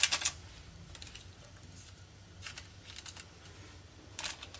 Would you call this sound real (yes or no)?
yes